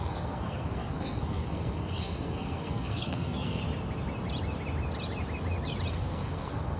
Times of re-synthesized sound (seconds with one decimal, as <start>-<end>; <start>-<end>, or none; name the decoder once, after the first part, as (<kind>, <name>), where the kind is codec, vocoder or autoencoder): 0.0-3.6 (codec, SNAC); 5.9-6.8